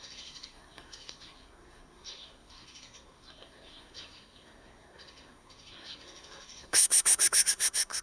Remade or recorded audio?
remade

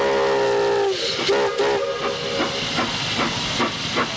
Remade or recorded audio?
recorded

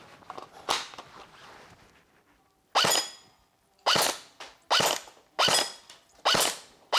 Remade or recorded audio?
recorded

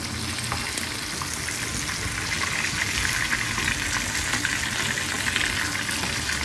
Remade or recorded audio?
recorded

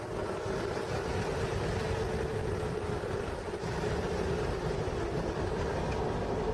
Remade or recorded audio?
recorded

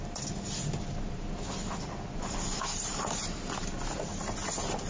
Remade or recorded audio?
recorded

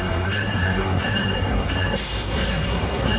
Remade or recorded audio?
remade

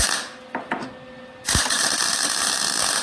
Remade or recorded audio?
recorded